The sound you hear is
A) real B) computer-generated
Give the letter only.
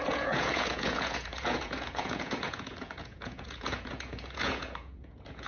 B